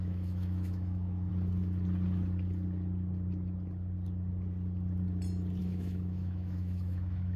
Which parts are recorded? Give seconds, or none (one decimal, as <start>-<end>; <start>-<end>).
1.3-5.6